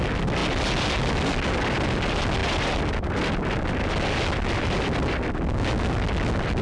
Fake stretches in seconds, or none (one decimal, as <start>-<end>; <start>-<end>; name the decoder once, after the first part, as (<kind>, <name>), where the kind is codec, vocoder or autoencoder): none